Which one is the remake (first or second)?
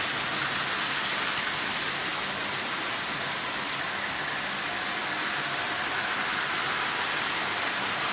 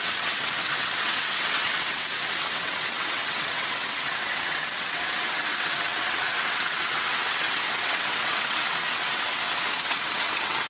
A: second